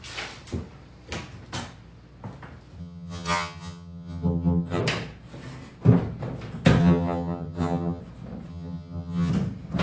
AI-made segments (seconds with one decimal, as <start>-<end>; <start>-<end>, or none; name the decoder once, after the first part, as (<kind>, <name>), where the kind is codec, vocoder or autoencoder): 2.8-4.8 (vocoder, HiFi-GAN); 6.8-8.0; 8.5-9.3